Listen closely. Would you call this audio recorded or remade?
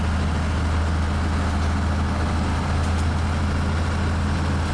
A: recorded